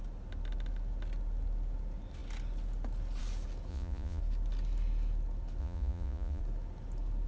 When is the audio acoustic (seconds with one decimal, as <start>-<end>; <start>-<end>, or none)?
0.0-3.7; 4.2-5.6; 6.4-7.3

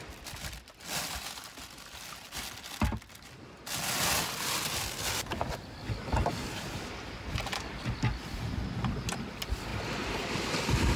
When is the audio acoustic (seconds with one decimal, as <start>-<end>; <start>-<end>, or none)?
0.0-11.0

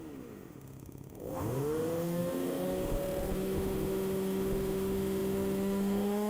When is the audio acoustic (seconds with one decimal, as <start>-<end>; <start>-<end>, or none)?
none

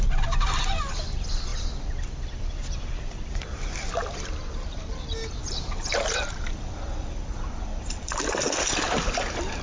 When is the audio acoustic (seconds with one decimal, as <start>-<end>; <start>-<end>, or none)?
0.0-9.6

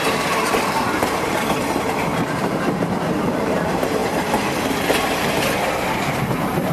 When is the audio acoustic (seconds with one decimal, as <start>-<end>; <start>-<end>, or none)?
4.0-5.2